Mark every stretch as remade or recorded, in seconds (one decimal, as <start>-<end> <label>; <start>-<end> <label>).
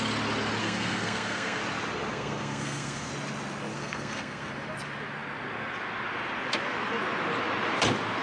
0.0-0.6 recorded; 0.6-1.6 remade; 1.6-2.1 recorded; 2.1-3.1 remade; 3.1-3.7 recorded; 3.7-4.5 remade; 4.5-8.2 recorded